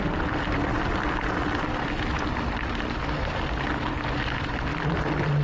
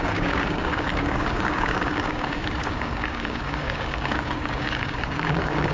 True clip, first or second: first